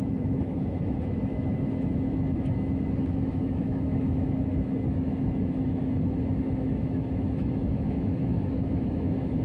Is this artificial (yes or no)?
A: yes